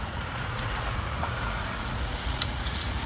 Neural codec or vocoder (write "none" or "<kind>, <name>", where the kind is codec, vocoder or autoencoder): vocoder, Vocos